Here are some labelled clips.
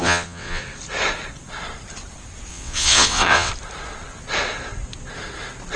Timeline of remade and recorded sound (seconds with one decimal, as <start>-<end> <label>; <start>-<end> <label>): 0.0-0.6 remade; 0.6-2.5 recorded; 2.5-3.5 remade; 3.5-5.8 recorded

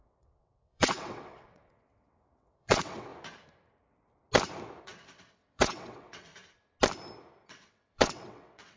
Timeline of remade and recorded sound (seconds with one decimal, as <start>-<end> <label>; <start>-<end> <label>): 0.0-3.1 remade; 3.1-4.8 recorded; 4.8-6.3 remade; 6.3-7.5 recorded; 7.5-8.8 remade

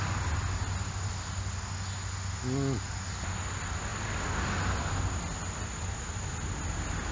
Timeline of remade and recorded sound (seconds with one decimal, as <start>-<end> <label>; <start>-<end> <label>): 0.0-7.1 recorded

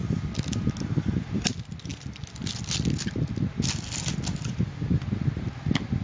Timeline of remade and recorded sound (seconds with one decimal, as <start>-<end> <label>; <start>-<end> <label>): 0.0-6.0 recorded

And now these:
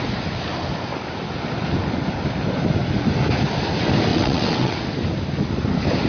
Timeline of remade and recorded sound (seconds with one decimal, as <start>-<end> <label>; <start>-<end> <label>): 0.0-4.1 recorded; 4.1-4.8 remade; 4.8-6.1 recorded

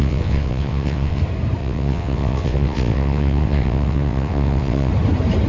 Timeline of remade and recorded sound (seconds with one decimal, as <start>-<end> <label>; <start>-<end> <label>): 0.0-1.2 remade; 1.2-1.6 recorded; 1.6-4.9 remade; 4.9-5.5 recorded

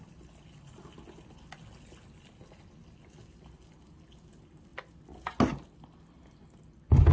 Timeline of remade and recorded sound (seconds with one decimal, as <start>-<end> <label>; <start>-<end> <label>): 0.0-7.1 recorded

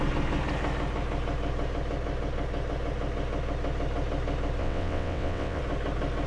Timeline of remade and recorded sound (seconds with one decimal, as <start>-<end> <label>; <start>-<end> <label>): 0.0-4.6 recorded; 4.6-5.6 remade; 5.6-6.3 recorded